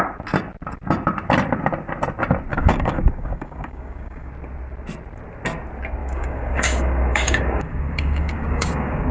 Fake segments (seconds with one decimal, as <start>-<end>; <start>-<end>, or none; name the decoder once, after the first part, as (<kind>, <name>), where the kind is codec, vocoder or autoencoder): 2.5-4.3 (codec, DAC); 6.0-9.1